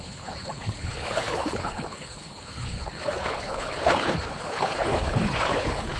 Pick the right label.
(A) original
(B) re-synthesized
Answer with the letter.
B